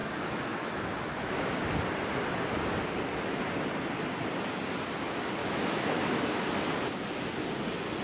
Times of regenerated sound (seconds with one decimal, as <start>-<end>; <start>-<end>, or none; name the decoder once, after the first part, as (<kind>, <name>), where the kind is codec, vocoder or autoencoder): 0.0-1.5 (autoencoder, DAC-VAE); 5.4-6.3